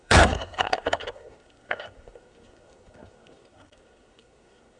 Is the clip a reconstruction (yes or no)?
yes